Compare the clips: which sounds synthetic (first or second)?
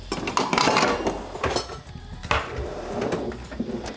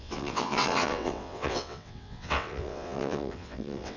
second